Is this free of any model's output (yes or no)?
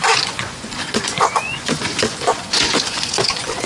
no